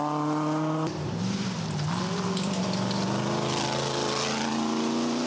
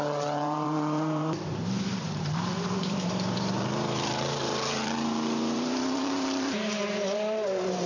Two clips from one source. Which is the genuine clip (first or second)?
first